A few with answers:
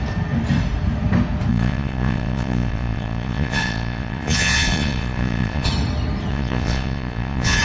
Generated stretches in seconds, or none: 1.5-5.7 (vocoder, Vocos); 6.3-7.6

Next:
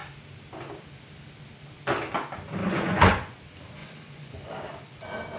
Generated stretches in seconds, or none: 2.6-3.4 (vocoder, Vocos); 3.8-4.5

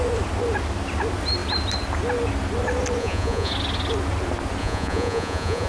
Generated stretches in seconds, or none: 3.0-3.5 (vocoder, Vocos); 4.6-5.7